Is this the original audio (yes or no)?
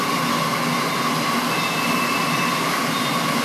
yes